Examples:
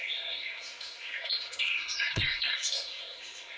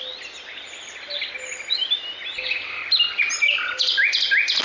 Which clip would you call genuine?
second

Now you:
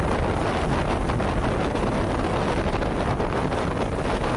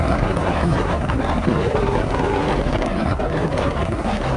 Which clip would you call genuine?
first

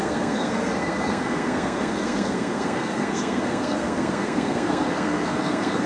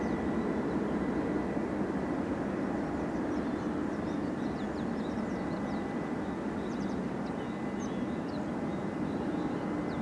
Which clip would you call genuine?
second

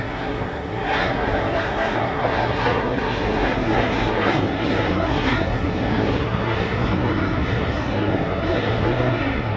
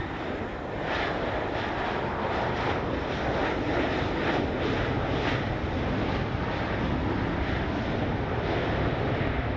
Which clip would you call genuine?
second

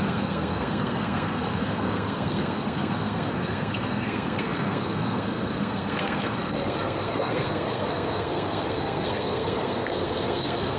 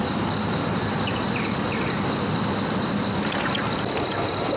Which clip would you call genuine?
second